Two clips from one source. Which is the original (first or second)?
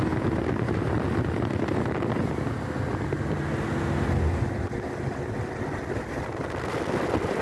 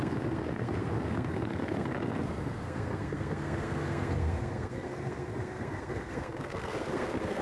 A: first